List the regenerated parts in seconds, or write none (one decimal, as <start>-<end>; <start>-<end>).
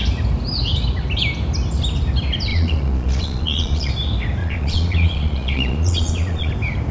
2.5-3.9; 4.4-6.5